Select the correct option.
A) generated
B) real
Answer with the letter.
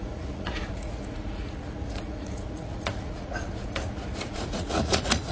A